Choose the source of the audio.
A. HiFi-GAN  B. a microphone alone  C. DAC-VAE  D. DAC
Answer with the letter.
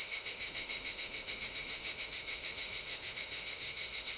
C